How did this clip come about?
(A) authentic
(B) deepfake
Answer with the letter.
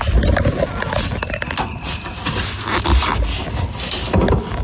A